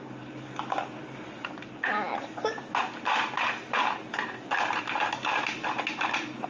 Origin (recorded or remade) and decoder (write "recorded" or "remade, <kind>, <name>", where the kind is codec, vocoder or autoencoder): recorded